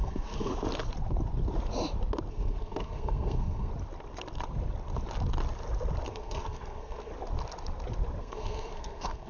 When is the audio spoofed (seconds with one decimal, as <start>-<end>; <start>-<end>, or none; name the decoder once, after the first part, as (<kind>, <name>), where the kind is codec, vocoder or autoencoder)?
0.0-0.5 (codec, SNAC); 2.3-3.7; 6.1-7.1; 8.2-9.3